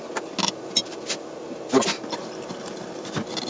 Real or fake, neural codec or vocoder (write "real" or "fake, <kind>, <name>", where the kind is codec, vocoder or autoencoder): real